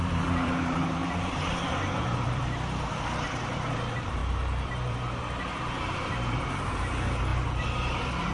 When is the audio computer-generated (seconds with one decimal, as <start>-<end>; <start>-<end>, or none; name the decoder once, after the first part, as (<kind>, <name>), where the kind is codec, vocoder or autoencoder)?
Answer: 0.0-4.2 (vocoder, BigVGAN v2); 4.9-8.3